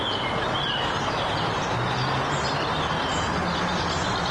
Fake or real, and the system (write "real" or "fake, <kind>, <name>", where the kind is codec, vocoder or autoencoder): real